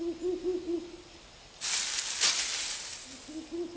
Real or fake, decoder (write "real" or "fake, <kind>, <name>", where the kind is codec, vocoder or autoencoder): real